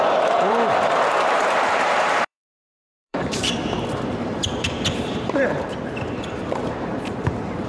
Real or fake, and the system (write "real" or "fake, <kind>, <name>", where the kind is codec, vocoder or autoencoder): fake, vocoder, BigVGAN v2